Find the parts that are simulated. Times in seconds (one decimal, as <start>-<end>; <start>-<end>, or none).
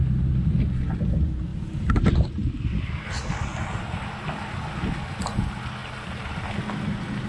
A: none